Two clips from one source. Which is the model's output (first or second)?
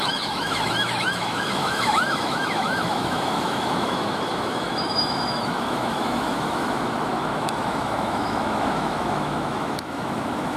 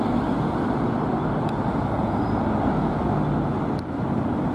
first